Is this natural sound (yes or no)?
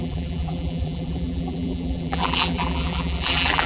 no